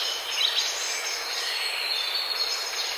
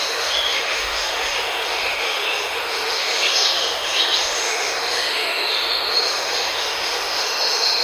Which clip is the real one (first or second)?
first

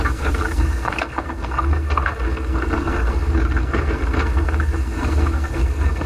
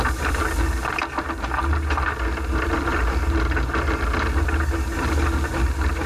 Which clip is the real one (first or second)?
second